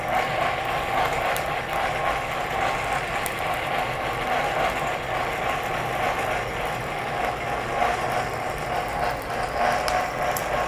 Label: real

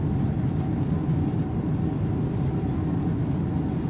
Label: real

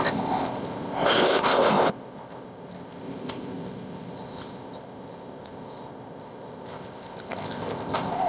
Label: fake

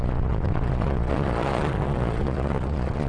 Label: fake